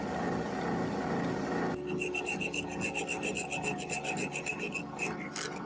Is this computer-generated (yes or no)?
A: no